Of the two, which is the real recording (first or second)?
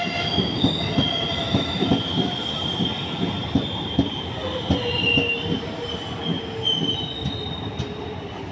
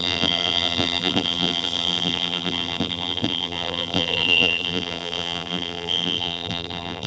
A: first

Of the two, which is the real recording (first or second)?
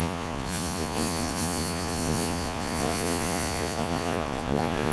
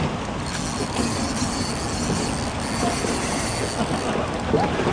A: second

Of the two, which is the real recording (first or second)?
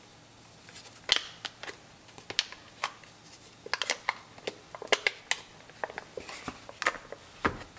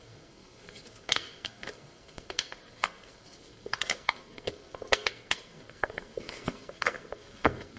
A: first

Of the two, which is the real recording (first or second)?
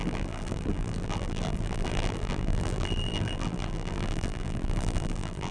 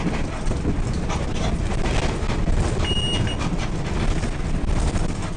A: second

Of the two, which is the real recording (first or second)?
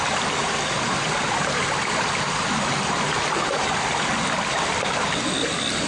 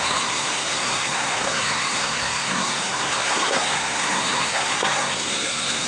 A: first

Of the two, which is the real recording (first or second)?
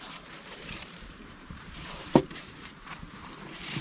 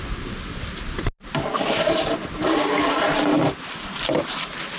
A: second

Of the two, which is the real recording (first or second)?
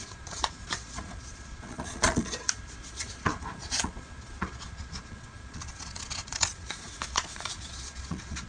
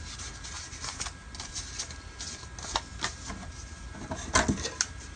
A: second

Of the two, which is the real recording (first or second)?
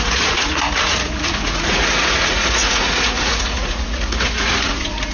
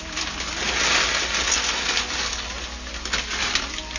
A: second